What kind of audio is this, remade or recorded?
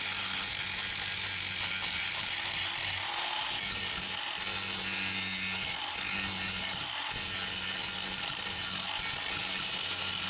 recorded